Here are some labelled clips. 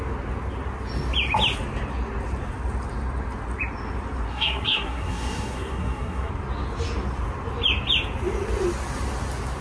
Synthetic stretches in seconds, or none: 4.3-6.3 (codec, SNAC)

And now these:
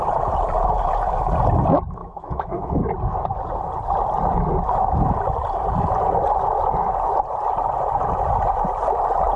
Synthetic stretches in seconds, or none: 2.0-2.8 (autoencoder, DAC-VAE)

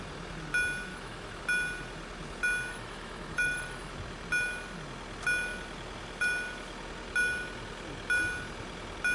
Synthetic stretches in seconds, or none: 0.9-1.4 (autoencoder, DAC-VAE); 2.7-3.9